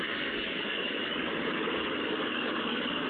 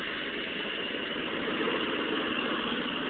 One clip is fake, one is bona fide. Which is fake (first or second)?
first